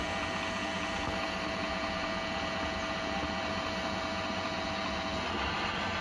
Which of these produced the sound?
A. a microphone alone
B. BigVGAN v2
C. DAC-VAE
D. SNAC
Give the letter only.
A